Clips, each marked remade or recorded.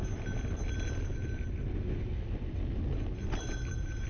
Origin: recorded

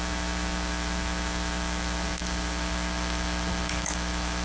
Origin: remade